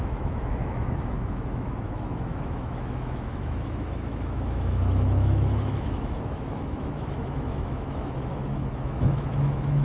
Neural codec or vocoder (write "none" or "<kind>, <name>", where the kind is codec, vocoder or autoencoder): autoencoder, DAC-VAE